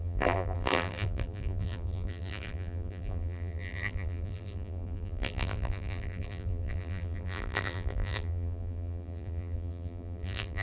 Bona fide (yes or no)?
no